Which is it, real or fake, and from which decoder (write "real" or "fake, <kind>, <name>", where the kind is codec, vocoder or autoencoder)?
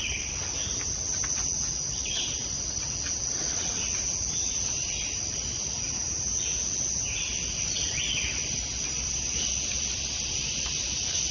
real